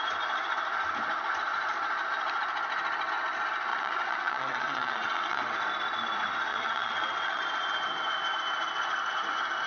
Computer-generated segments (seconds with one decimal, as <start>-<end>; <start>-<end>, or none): 3.7-5.4; 6.5-7.4